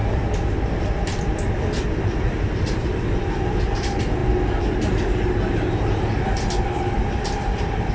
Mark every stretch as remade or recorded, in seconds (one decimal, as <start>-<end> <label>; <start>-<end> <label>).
0.0-7.9 recorded

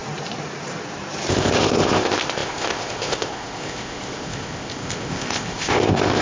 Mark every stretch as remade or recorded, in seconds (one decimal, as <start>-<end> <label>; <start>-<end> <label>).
0.0-1.3 recorded; 1.3-6.2 remade

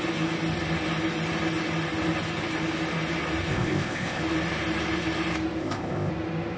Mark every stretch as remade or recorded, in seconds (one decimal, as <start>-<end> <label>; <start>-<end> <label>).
0.0-3.5 recorded; 3.5-4.2 remade; 4.2-5.6 recorded; 5.6-6.1 remade; 6.1-6.6 recorded

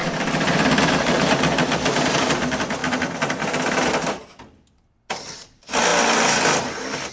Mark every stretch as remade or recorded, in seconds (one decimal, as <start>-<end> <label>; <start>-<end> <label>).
0.0-7.1 recorded

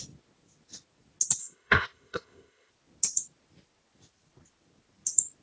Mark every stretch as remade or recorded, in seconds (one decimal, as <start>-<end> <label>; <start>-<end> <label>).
0.0-1.4 recorded; 1.4-2.7 remade; 2.7-5.4 recorded

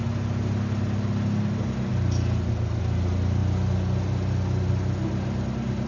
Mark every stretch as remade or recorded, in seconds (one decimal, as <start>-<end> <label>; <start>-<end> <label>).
0.0-5.9 recorded

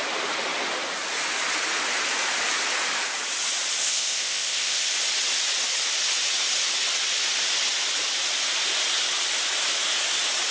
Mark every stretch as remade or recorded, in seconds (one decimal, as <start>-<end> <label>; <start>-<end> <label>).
0.0-3.8 recorded; 3.8-4.9 remade; 4.9-10.5 recorded

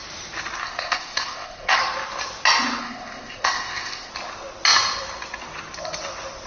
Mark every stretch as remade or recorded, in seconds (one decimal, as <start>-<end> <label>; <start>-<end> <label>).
0.0-0.6 recorded; 0.6-1.8 remade; 1.8-2.8 recorded; 2.8-4.1 remade; 4.1-6.5 recorded